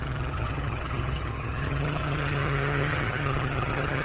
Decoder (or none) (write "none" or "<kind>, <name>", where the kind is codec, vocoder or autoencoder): vocoder, HiFi-GAN